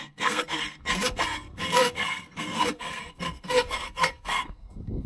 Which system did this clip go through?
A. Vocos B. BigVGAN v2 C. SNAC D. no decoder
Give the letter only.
C